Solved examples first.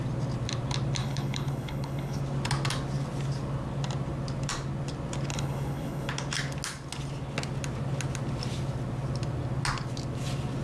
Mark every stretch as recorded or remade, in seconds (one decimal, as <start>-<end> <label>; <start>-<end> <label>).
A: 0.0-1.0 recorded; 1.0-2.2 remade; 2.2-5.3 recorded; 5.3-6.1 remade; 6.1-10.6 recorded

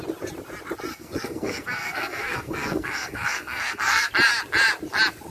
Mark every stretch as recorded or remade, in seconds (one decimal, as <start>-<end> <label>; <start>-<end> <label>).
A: 0.0-0.9 recorded; 0.9-4.1 remade; 4.1-5.3 recorded

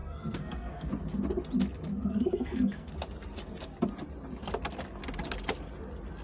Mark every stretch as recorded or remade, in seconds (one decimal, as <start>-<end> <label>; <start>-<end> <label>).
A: 0.0-0.9 remade; 0.9-1.9 recorded; 1.9-2.9 remade; 2.9-6.2 recorded

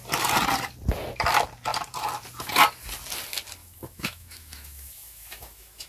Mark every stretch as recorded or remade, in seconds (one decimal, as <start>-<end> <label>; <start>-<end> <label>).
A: 0.0-3.6 recorded; 3.6-5.9 remade

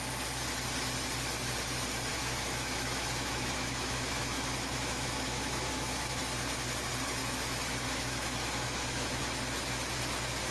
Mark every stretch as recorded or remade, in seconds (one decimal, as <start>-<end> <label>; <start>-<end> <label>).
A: 0.0-2.1 recorded; 2.1-6.2 remade; 6.2-7.2 recorded; 7.2-9.2 remade; 9.2-10.5 recorded

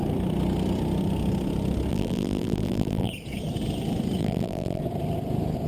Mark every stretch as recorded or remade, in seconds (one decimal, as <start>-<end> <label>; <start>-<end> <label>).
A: 0.0-1.9 recorded; 1.9-3.1 remade; 3.1-4.2 recorded; 4.2-4.8 remade; 4.8-5.7 recorded

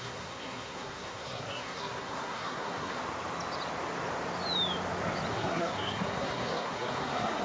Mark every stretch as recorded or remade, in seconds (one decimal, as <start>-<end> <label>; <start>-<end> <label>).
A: 0.0-3.0 remade; 3.0-5.3 recorded; 5.3-7.4 remade